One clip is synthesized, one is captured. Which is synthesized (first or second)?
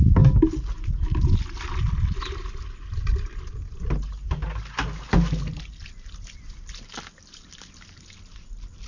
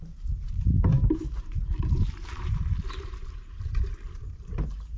second